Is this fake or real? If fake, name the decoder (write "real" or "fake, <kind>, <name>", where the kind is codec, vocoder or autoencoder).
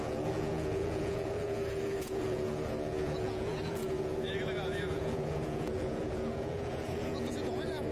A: fake, vocoder, Vocos